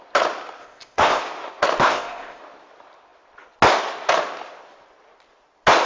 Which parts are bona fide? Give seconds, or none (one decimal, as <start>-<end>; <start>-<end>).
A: 0.0-0.6; 1.2-1.8; 2.4-5.9